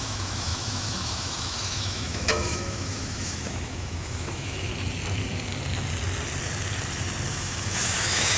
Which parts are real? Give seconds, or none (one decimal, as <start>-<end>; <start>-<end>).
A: 4.7-7.3